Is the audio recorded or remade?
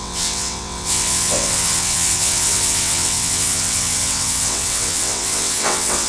remade